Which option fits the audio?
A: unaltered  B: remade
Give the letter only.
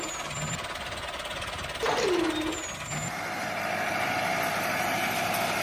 A